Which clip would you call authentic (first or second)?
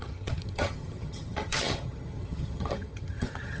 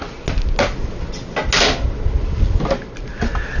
second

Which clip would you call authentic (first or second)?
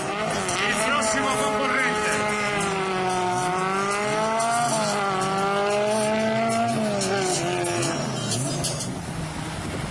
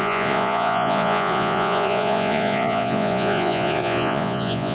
first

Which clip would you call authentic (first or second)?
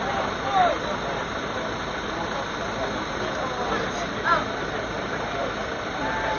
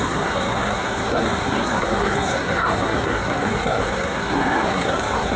first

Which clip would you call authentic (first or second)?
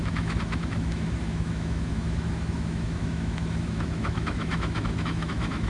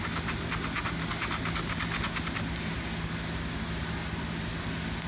second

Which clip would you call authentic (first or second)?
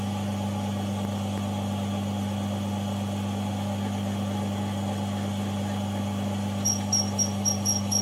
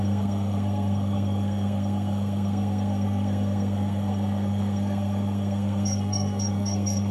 first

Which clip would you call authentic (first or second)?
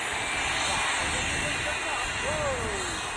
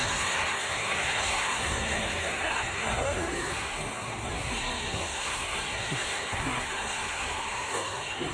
first